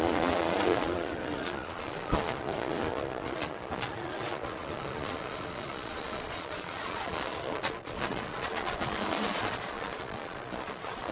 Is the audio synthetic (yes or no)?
yes